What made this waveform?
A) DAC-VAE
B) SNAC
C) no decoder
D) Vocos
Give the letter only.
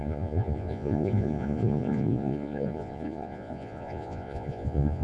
D